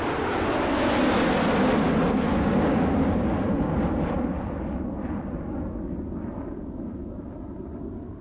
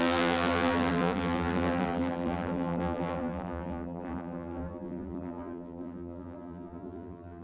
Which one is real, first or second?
first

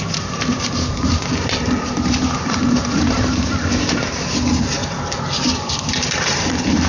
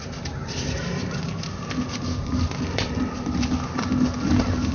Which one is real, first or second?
second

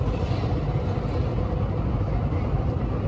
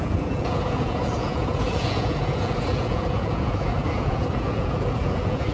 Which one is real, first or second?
first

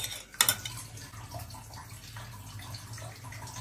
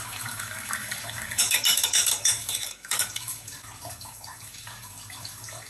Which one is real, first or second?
first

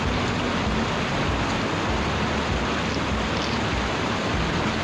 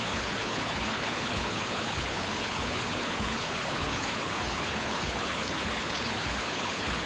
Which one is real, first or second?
first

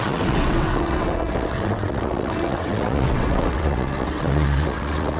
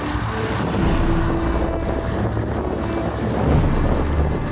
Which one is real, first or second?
second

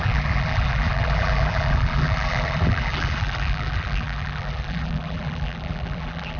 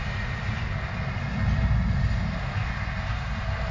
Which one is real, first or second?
second